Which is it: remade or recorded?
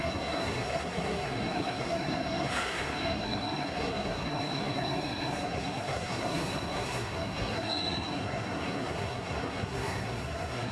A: remade